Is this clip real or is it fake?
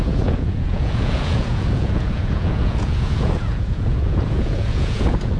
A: fake